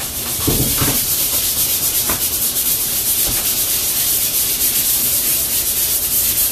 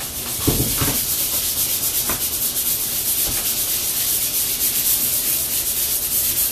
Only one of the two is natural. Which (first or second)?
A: second